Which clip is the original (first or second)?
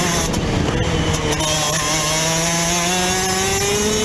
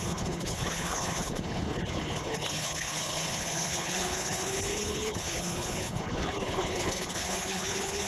first